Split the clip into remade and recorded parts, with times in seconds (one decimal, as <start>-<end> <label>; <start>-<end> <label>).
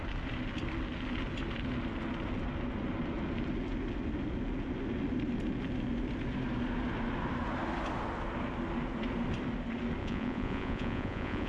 0.0-10.0 recorded; 10.0-11.5 remade